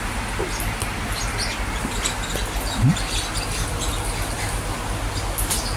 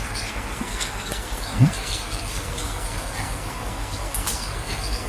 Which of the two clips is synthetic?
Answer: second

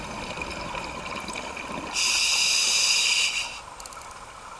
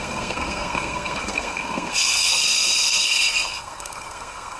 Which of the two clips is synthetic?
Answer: second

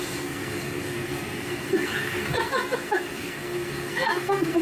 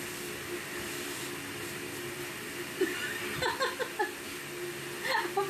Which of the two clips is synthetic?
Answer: first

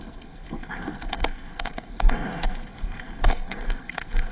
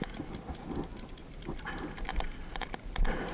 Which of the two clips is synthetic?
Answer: first